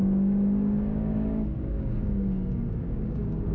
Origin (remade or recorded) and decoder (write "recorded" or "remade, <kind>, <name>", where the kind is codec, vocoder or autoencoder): remade, codec, DAC